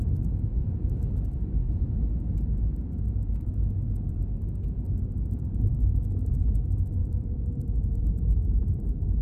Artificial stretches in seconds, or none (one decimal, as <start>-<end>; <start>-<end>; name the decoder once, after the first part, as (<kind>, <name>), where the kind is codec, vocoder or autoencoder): 7.0-8.7 (vocoder, BigVGAN v2)